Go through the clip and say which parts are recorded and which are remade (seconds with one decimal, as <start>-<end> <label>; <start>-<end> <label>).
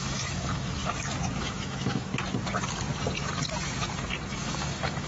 0.0-0.8 remade; 0.8-1.4 recorded; 1.4-2.1 remade; 2.1-4.3 recorded; 4.3-5.1 remade